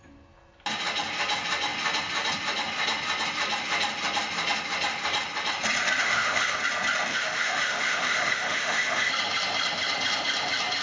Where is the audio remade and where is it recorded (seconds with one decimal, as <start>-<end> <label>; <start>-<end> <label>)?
0.0-6.0 recorded; 6.0-6.6 remade; 6.6-7.1 recorded; 7.1-9.1 remade; 9.1-10.8 recorded